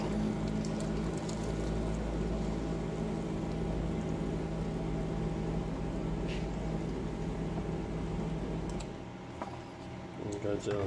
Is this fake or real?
real